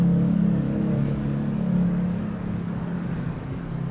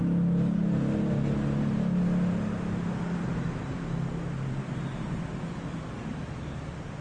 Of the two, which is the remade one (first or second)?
first